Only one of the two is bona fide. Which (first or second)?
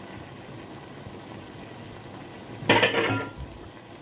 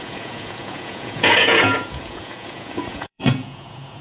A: first